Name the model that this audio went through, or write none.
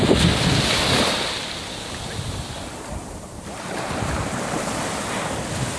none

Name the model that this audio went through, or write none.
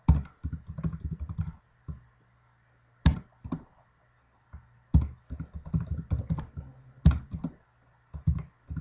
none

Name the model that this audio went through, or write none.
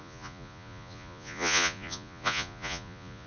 vocoder, Vocos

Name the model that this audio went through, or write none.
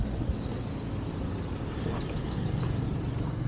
none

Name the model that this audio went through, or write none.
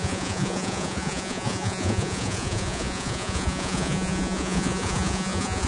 vocoder, Vocos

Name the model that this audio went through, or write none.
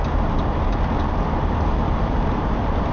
none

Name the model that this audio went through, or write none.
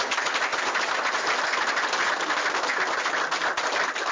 none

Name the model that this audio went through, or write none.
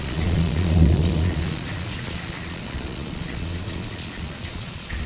vocoder, Vocos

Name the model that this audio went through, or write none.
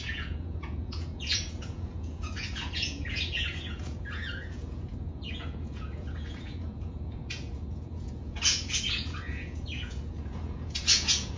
vocoder, Vocos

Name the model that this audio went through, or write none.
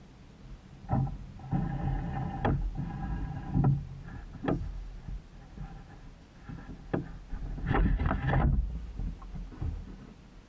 none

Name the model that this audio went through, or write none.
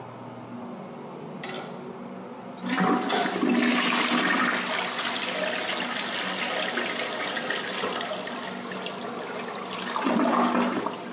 none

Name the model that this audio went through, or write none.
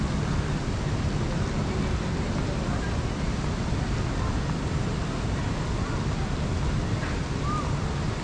none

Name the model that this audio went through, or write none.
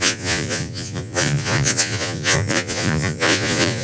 vocoder, Vocos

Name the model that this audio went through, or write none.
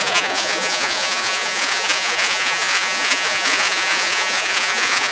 vocoder, Vocos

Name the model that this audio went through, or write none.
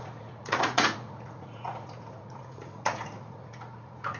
vocoder, Vocos